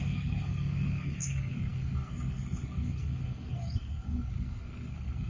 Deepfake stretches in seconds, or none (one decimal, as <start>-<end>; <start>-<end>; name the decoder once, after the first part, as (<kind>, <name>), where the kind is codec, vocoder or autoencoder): 0.0-5.3 (codec, SNAC)